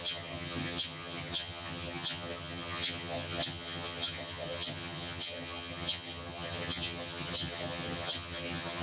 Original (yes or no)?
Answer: no